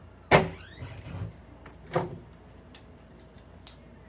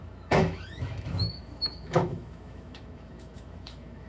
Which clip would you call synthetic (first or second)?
second